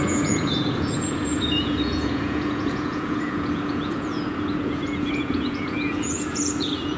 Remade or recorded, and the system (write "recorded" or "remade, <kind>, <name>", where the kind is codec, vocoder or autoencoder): remade, vocoder, Vocos